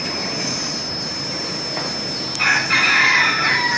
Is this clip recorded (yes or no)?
yes